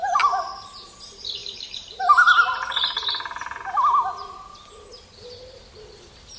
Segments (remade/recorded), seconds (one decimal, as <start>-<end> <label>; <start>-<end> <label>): 0.0-6.4 recorded